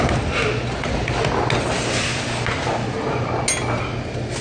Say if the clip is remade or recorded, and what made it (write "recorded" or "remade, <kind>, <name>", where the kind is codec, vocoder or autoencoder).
recorded